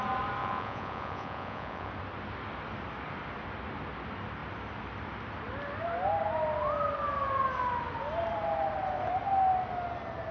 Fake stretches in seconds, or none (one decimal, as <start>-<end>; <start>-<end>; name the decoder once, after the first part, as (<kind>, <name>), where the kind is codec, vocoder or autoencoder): 0.4-1.9 (vocoder, Vocos)